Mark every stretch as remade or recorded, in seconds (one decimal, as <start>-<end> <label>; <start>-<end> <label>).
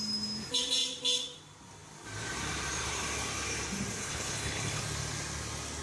0.0-4.0 recorded; 4.0-4.8 remade; 4.8-5.8 recorded